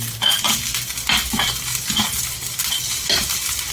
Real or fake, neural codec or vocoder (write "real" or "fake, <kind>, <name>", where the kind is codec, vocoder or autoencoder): real